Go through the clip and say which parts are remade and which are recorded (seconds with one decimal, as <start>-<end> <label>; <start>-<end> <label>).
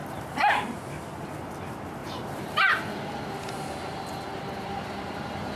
0.0-0.9 remade; 0.9-2.0 recorded; 2.0-2.8 remade; 2.8-4.3 recorded; 4.3-5.1 remade; 5.1-5.6 recorded